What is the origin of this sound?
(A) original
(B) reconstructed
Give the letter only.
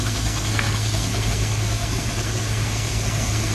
B